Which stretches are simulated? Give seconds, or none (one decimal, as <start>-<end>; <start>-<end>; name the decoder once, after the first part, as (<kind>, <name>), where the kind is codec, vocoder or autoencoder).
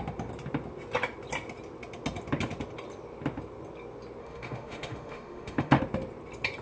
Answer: 4.2-5.8 (autoencoder, DAC-VAE)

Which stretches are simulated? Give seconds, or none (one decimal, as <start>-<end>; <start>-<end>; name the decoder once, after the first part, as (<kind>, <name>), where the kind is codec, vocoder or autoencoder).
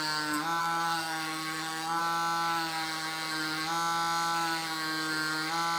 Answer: 0.6-2.0 (codec, SNAC)